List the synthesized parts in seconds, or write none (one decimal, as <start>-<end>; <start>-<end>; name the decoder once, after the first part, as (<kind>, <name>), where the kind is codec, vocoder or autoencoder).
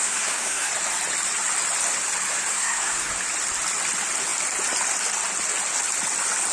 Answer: 0.0-0.7 (codec, SNAC); 2.5-3.1